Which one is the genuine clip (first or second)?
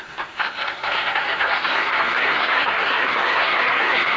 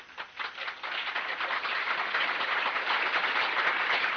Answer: second